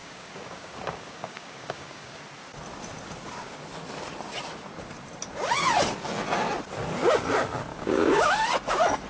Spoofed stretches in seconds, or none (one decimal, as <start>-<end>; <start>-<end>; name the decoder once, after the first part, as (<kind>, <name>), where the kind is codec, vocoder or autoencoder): 0.0-2.2 (codec, DAC); 7.7-8.3

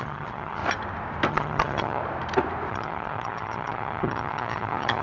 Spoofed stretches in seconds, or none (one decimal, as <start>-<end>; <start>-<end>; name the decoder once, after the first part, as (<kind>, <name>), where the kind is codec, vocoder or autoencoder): 0.0-0.6 (vocoder, HiFi-GAN); 1.3-2.0; 2.7-5.0

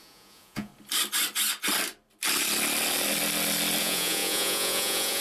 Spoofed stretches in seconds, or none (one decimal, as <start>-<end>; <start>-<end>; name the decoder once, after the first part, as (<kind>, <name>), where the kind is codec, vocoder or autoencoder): 0.0-0.7 (vocoder, Vocos); 3.8-5.2

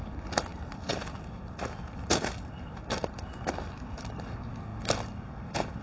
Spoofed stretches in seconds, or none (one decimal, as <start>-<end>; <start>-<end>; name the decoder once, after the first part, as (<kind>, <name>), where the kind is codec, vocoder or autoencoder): none

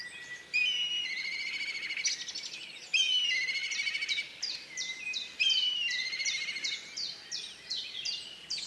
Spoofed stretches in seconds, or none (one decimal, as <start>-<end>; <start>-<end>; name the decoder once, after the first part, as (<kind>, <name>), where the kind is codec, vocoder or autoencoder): 3.6-8.7 (vocoder, BigVGAN v2)

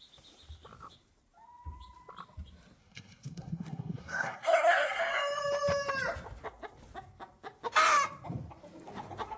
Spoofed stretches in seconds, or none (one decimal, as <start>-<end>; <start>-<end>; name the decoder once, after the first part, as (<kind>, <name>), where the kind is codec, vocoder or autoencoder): 2.8-5.0 (codec, SNAC)

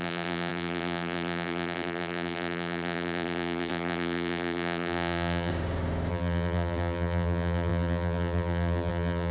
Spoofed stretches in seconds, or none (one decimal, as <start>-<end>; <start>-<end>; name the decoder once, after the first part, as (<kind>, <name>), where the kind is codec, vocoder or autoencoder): 0.0-5.5 (vocoder, BigVGAN v2); 6.1-9.3